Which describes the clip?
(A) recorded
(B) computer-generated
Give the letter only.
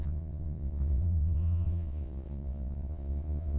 B